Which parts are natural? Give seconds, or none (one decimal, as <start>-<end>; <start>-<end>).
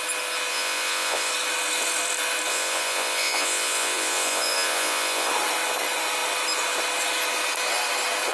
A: 0.0-0.5; 1.3-2.5; 5.3-8.3